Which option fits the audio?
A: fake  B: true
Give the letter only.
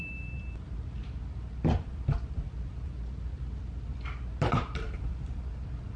B